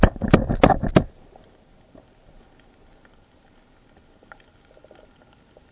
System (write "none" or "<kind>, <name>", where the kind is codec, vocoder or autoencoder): none